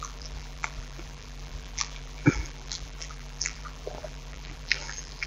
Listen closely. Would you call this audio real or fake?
fake